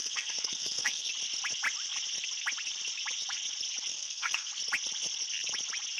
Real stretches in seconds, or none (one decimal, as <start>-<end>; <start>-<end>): 1.1-3.9; 4.5-6.0